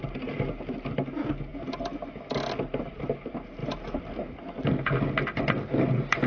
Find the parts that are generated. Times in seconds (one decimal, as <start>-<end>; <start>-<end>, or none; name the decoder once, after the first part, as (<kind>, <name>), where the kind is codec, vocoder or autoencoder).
none

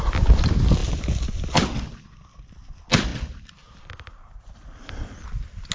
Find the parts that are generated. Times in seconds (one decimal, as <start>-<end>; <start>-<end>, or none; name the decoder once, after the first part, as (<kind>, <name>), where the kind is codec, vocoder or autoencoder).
none

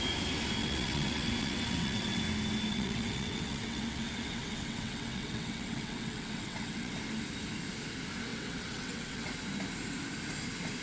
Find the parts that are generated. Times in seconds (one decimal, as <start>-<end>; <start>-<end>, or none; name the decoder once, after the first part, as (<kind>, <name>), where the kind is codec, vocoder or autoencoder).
0.6-2.2 (vocoder, WaveNeXt); 2.7-6.9; 8.3-9.3

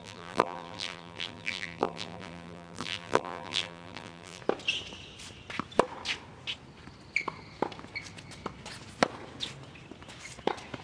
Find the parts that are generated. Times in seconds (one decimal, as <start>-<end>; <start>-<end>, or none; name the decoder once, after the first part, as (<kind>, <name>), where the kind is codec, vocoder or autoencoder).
0.0-4.4 (vocoder, BigVGAN v2)